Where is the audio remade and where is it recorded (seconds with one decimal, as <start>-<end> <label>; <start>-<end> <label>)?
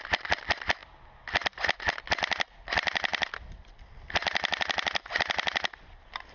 0.0-6.3 recorded